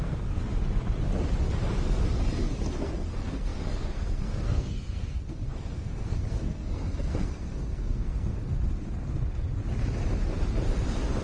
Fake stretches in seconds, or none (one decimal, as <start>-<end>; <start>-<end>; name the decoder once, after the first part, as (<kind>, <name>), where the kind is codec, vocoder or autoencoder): 0.0-0.4 (codec, SNAC); 2.8-8.4